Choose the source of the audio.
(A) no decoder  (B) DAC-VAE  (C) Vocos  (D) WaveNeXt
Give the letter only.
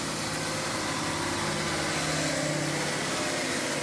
A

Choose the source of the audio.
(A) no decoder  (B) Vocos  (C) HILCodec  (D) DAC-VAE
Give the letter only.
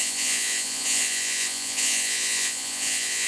B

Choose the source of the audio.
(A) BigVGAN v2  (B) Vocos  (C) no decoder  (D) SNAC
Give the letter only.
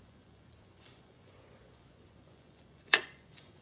B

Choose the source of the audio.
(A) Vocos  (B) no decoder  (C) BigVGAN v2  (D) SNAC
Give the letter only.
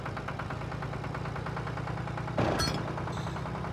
B